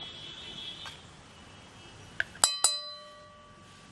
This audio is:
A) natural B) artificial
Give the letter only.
A